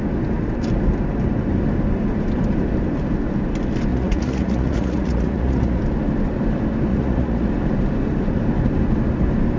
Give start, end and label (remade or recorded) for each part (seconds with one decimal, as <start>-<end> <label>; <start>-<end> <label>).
0.0-3.9 recorded; 3.9-5.8 remade; 5.8-6.9 recorded; 6.9-7.5 remade; 7.5-9.6 recorded